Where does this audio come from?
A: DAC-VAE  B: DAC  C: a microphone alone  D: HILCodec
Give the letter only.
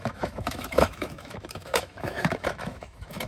A